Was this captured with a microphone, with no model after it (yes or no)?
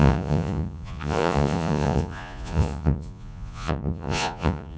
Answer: no